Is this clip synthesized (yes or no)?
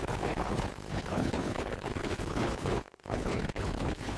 yes